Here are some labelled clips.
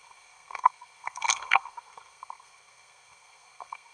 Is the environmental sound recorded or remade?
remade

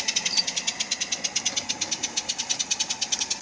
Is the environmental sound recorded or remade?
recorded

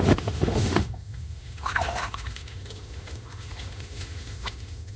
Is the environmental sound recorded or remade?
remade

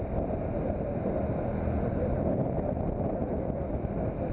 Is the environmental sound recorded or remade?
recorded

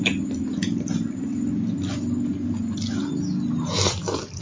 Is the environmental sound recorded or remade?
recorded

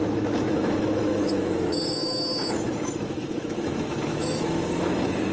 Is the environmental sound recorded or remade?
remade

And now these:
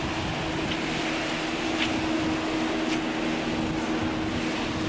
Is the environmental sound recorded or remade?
recorded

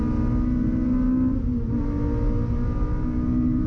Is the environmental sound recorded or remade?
recorded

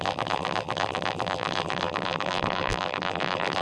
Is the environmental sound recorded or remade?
remade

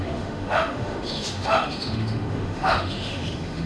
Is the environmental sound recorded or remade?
remade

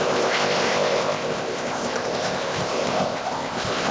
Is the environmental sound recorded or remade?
remade